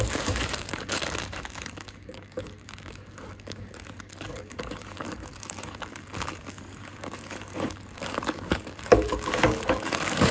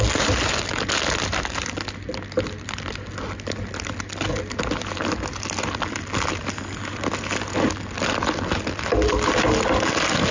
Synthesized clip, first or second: first